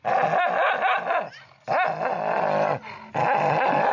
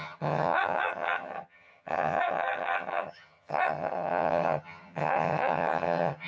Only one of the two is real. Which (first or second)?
first